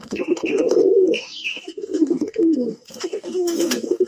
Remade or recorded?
remade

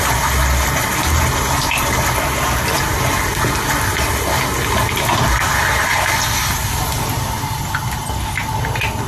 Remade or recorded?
recorded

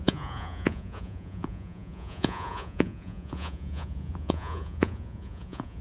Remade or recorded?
remade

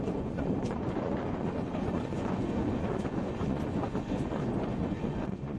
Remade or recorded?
remade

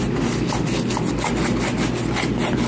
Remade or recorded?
recorded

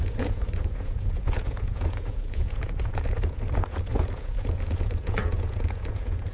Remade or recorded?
remade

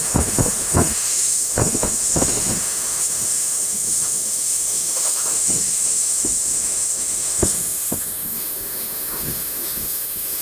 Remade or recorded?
remade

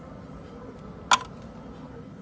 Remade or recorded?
recorded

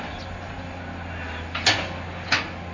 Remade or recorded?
recorded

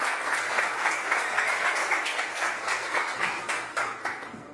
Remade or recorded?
remade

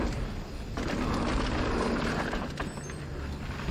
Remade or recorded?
recorded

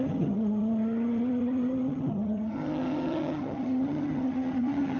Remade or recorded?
remade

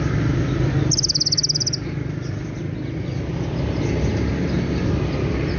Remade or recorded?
recorded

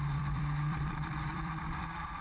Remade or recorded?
remade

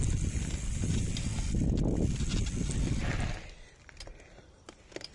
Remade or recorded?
recorded